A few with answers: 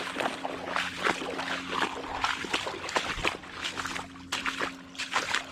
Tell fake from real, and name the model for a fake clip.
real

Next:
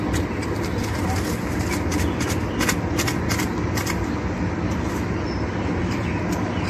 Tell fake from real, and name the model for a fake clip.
real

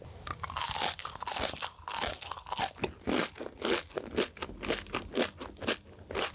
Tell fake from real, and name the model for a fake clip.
real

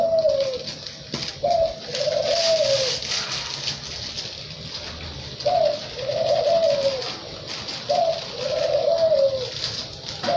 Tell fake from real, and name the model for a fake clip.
real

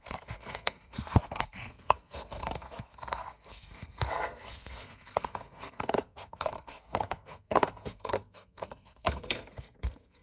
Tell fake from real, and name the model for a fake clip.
fake, codec, SNAC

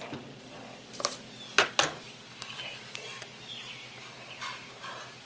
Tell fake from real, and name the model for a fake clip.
real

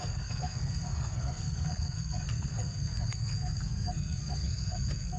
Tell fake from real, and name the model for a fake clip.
fake, codec, SNAC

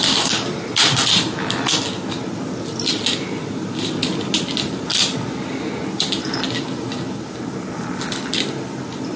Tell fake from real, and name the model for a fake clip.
real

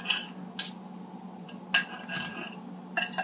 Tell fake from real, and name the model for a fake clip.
real